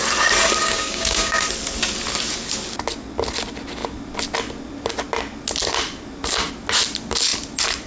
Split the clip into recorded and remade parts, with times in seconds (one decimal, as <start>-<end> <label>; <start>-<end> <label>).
0.0-0.6 recorded; 0.6-1.4 remade; 1.4-7.9 recorded